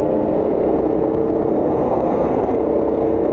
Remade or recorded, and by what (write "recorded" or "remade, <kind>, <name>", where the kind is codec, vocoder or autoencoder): remade, codec, SNAC